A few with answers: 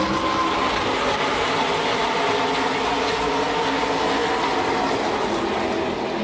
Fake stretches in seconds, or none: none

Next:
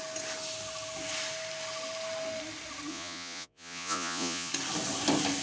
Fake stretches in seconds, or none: 2.9-4.5 (vocoder, Vocos)

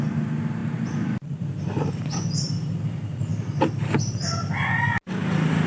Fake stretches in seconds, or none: none

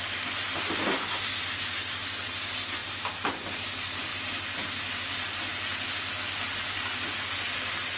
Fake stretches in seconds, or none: none